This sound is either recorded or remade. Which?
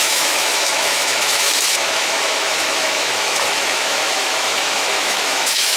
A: remade